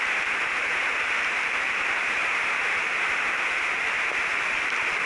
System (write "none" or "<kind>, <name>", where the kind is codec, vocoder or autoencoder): vocoder, BigVGAN v2